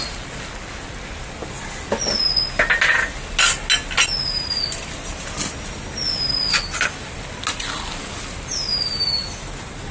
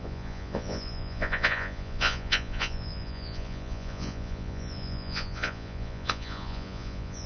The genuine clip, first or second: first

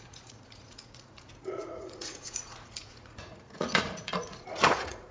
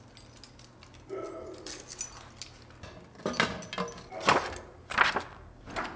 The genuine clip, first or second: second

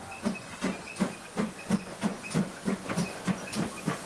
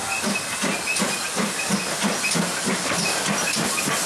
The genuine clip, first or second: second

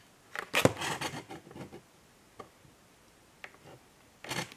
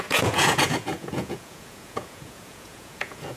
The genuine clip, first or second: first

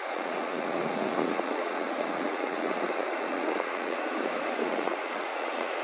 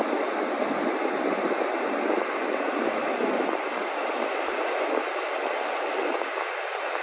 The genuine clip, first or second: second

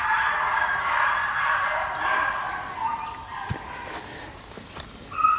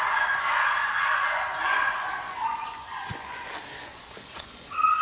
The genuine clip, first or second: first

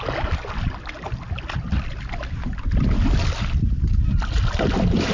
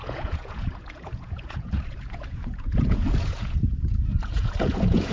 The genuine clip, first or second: first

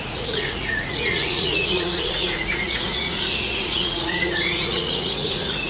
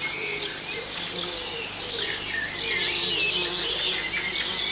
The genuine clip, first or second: second